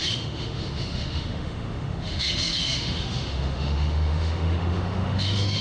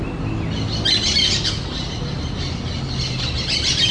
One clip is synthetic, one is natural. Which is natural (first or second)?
second